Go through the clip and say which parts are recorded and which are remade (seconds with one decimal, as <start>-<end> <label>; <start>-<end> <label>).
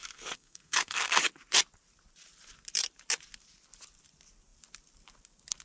0.0-1.2 remade; 1.2-5.6 recorded